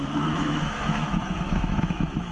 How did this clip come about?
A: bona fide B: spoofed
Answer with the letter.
B